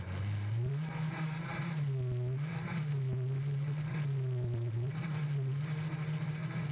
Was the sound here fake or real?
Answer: real